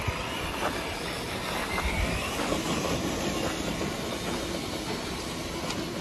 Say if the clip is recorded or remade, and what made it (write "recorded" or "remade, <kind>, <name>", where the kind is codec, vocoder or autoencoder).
recorded